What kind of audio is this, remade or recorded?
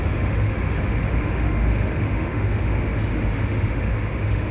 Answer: remade